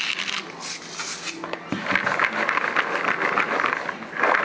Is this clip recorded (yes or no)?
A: yes